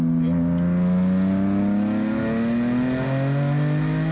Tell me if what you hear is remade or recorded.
recorded